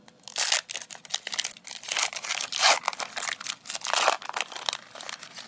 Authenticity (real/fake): real